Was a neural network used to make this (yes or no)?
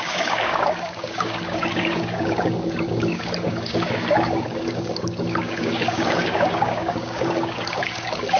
yes